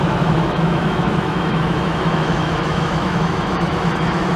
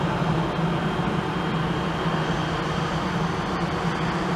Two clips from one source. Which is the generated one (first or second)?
first